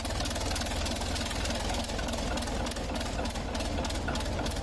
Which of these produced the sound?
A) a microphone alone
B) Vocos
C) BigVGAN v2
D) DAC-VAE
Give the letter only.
A